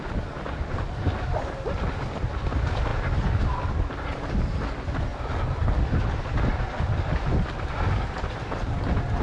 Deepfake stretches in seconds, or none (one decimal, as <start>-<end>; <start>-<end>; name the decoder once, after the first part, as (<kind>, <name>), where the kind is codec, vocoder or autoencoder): 5.1-8.6 (vocoder, BigVGAN v2)